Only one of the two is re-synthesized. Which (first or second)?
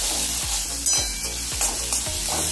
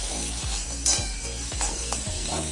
second